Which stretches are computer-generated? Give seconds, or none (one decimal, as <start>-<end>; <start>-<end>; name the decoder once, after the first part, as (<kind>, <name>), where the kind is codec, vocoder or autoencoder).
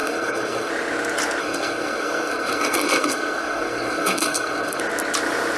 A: 0.0-0.7 (codec, SNAC); 1.4-4.8